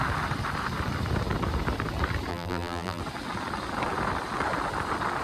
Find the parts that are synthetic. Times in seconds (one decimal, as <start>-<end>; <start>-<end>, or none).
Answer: 2.3-3.0